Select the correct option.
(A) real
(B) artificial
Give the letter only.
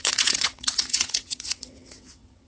B